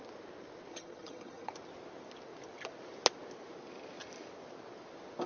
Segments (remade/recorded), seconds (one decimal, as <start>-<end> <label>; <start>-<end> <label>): 0.0-0.7 recorded; 0.7-1.5 remade; 1.5-5.3 recorded

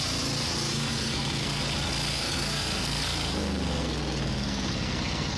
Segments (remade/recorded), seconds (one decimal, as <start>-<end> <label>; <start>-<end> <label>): 0.0-0.7 recorded; 0.7-1.6 remade; 1.6-2.1 recorded; 2.1-5.4 remade